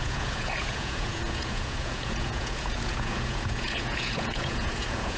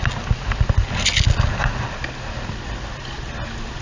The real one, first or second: second